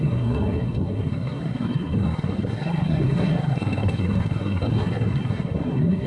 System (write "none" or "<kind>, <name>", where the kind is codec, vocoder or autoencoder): codec, SNAC